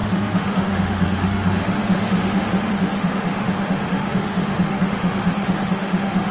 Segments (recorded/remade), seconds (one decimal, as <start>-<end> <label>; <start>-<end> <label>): 0.0-6.3 remade